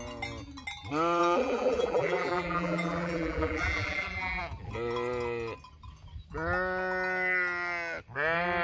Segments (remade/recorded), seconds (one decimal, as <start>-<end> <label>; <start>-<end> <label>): 0.0-1.2 recorded; 1.2-4.4 remade; 4.4-8.6 recorded